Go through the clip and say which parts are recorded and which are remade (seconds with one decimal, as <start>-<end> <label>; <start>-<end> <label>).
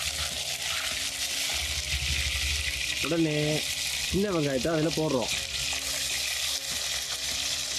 0.0-7.8 recorded